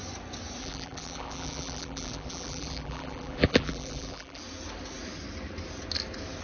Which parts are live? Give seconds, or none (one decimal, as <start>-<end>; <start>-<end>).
0.0-0.6; 4.4-6.4